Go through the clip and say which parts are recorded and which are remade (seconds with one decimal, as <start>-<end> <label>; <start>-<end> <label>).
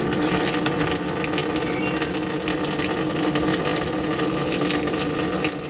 0.0-5.7 recorded